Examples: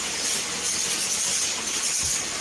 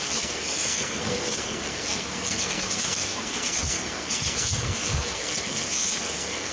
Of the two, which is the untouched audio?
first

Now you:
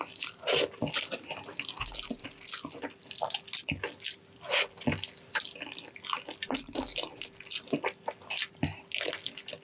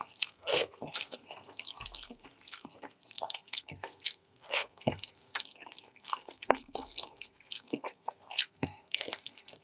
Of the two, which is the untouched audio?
first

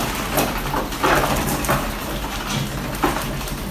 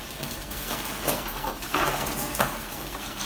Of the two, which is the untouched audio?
first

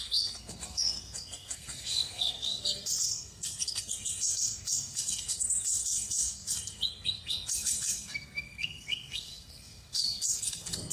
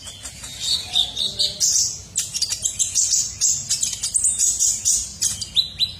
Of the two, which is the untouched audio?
second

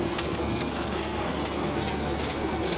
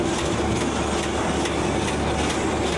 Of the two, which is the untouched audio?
second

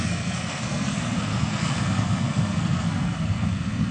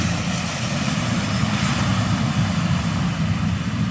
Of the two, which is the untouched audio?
second